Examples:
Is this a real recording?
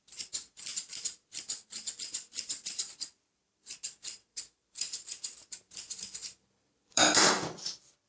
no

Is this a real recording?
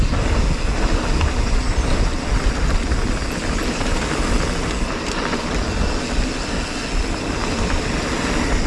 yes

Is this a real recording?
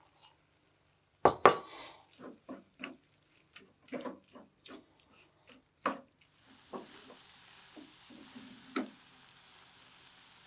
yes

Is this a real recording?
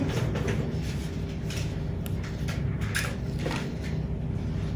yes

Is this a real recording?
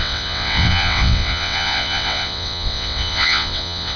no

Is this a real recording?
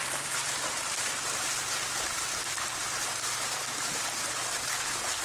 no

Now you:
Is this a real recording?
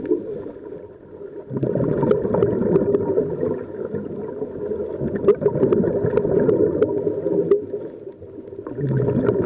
yes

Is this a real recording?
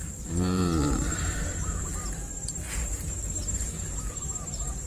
no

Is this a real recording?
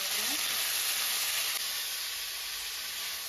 yes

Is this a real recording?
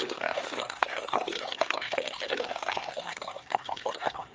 no